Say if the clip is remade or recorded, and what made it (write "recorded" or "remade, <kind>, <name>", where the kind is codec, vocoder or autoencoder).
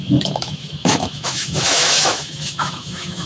remade, autoencoder, DAC-VAE